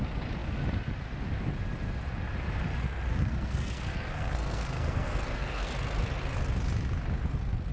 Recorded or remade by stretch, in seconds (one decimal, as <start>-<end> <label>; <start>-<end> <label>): 0.0-3.1 recorded; 3.1-5.7 remade; 5.7-7.7 recorded

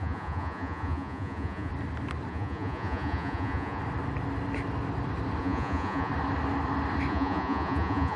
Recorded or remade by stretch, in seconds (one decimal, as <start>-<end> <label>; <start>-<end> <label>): 0.0-1.7 remade; 1.7-2.3 recorded; 2.3-3.8 remade; 3.8-5.4 recorded; 5.4-6.1 remade; 6.1-7.1 recorded; 7.1-8.2 remade

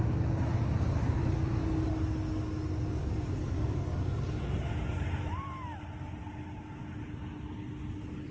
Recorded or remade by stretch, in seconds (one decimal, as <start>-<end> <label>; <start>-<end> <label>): 0.0-0.5 recorded; 0.5-1.9 remade; 1.9-3.0 recorded; 3.0-4.4 remade; 4.4-8.3 recorded

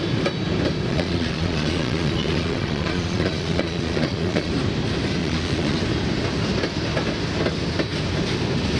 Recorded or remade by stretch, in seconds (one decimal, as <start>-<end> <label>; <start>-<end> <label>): 0.0-0.9 recorded; 0.9-4.5 remade; 4.5-5.2 recorded; 5.2-5.8 remade; 5.8-8.8 recorded

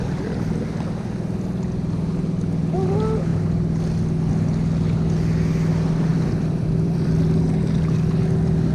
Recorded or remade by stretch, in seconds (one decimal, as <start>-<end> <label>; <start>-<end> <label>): 0.0-6.1 recorded; 6.1-7.4 remade; 7.4-8.7 recorded